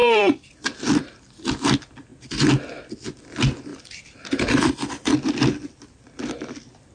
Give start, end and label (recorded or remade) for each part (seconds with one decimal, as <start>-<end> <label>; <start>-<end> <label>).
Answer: 0.0-0.5 remade; 0.5-3.7 recorded; 3.7-4.6 remade; 4.6-6.9 recorded